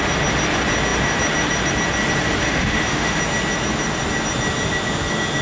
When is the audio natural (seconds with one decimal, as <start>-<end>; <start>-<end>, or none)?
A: 0.0-2.4; 3.2-5.4